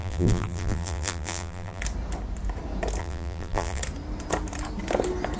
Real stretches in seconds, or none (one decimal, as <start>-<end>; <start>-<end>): 1.8-3.0; 3.8-5.4